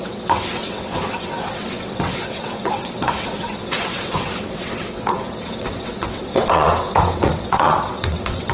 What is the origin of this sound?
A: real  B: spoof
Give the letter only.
B